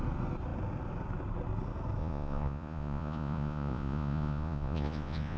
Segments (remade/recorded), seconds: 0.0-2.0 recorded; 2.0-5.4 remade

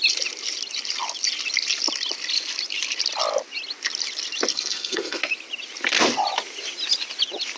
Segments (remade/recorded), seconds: 0.0-4.5 recorded; 4.5-5.2 remade; 5.2-7.6 recorded

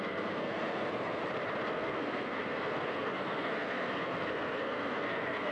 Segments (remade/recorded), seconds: 0.0-1.2 remade; 1.2-1.7 recorded; 1.7-5.5 remade

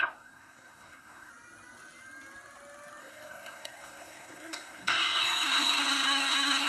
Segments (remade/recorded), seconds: 0.0-1.3 remade; 1.3-3.0 recorded; 3.0-6.7 remade

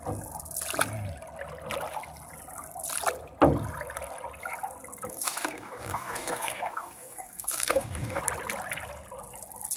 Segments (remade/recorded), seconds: 0.0-5.1 recorded; 5.1-8.2 remade; 8.2-9.8 recorded

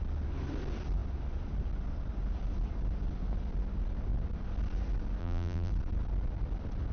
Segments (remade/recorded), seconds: 0.0-5.2 recorded; 5.2-5.7 remade; 5.7-6.9 recorded

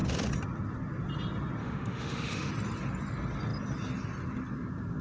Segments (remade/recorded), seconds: 0.0-1.6 recorded; 1.6-2.5 remade; 2.5-5.0 recorded

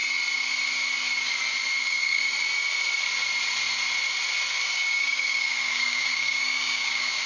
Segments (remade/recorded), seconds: 0.0-1.8 recorded; 1.8-2.2 remade; 2.2-4.5 recorded; 4.5-7.3 remade